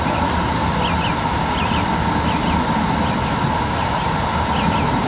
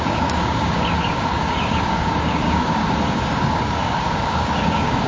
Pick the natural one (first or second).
first